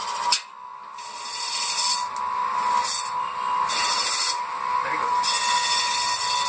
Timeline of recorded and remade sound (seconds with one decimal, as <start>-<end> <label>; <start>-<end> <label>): 0.0-6.5 recorded